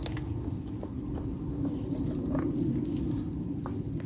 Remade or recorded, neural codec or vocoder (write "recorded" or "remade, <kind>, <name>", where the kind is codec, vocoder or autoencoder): recorded